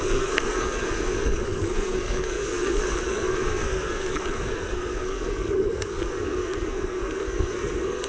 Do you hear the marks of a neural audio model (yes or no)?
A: yes